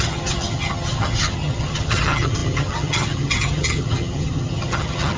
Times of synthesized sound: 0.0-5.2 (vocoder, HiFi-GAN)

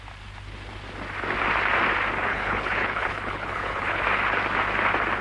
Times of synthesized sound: 2.3-4.0 (codec, HILCodec)

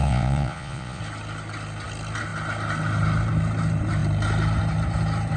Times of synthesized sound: 0.0-1.0 (vocoder, Vocos)

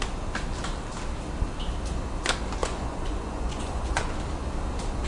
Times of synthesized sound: 2.6-4.1 (vocoder, Vocos)

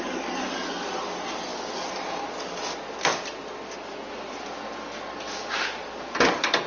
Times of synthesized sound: none

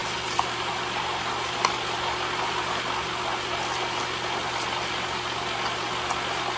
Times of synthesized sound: none

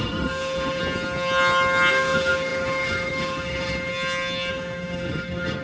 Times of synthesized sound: 0.0-0.8 (autoencoder, DAC-VAE); 1.9-3.9; 4.5-5.6

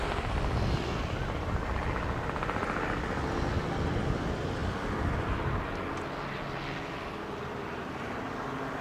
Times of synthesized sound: none